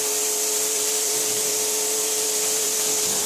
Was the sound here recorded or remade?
remade